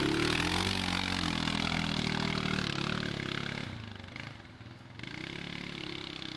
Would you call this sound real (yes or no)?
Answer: yes